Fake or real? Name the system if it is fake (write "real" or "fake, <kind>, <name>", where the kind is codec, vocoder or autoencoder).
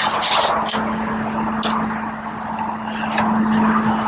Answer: real